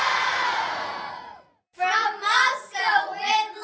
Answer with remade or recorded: remade